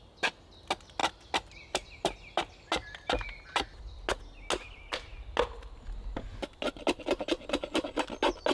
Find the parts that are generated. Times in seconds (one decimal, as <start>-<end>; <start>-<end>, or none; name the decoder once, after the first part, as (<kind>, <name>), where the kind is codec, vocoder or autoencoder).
none